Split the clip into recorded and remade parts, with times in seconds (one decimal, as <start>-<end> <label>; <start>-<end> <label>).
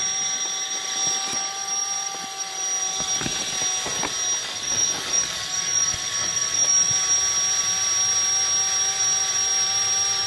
0.0-4.4 recorded; 4.4-6.9 remade; 6.9-10.3 recorded